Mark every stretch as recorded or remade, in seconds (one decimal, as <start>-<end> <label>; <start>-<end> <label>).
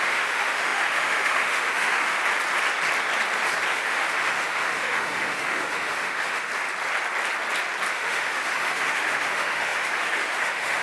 0.0-2.2 remade; 2.2-3.7 recorded; 3.7-6.5 remade; 6.5-7.9 recorded; 7.9-10.8 remade